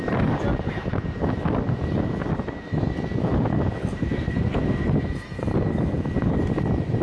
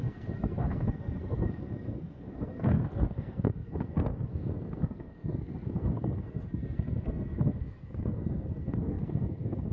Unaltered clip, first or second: first